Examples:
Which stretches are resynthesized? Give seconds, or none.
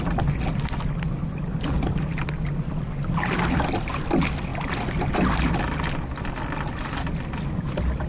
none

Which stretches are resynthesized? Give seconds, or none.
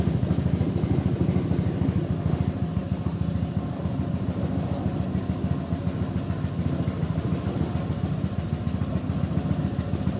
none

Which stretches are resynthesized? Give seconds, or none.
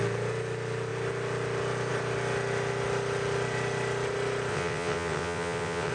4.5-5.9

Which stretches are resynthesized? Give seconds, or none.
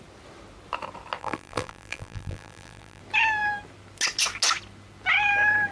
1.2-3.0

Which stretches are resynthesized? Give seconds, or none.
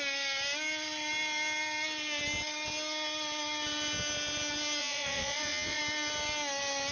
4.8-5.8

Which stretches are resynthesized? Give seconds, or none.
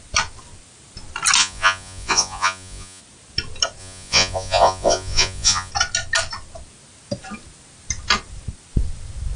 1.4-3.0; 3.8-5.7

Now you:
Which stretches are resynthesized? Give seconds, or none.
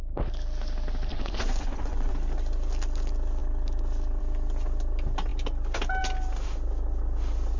1.1-2.1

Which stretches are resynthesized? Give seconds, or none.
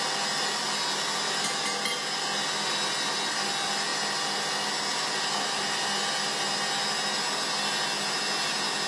none